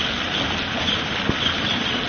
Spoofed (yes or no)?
no